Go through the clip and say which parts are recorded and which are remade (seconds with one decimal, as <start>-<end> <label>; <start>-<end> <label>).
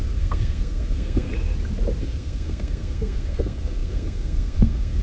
0.0-1.3 remade; 1.3-2.0 recorded; 2.0-5.0 remade